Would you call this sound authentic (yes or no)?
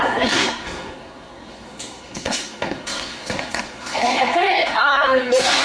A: no